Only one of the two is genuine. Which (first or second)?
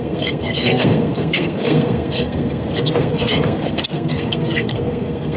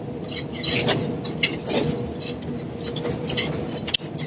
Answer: second